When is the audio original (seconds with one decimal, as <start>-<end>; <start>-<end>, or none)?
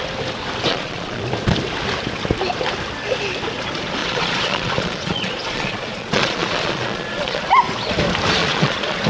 0.0-0.7; 1.2-4.0; 7.4-8.4